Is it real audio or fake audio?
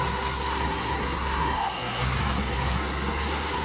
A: fake